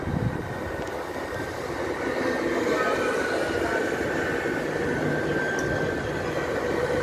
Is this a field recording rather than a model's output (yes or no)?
yes